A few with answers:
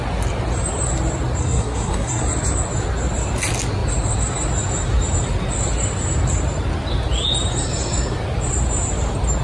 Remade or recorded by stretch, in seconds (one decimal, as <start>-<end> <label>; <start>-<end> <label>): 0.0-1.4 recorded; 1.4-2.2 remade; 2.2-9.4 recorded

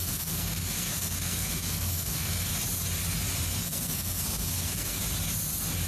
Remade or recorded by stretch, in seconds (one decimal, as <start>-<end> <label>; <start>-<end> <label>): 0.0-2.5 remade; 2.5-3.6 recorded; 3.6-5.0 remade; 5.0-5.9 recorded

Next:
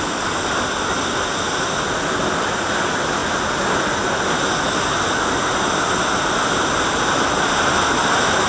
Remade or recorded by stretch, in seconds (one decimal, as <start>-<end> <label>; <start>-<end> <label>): 0.0-8.5 recorded

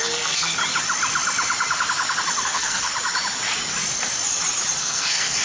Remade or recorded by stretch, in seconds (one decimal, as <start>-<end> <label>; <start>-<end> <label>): 0.0-0.6 remade; 0.6-2.4 recorded; 2.4-2.9 remade; 2.9-4.8 recorded; 4.8-5.4 remade

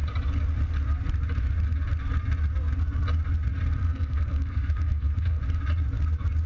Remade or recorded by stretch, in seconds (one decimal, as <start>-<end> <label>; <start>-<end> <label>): 0.0-3.8 recorded; 3.8-5.4 remade; 5.4-6.5 recorded

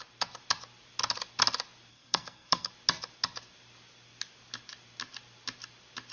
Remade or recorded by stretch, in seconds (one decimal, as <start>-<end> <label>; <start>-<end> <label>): 0.0-1.9 recorded; 1.9-2.7 remade; 2.7-6.1 recorded